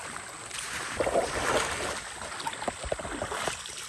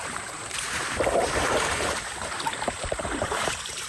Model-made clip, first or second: second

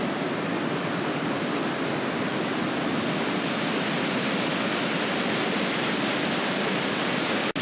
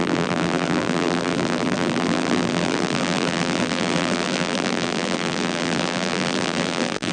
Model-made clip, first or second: second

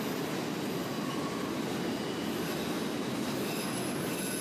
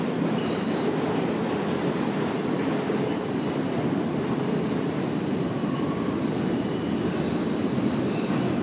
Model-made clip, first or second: second